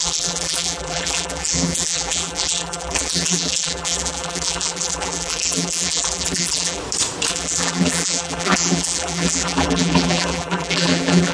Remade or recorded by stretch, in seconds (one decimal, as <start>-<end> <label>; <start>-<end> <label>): 0.0-6.8 remade; 6.8-7.3 recorded; 7.3-11.3 remade